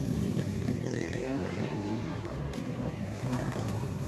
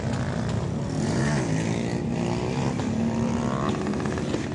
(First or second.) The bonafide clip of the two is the second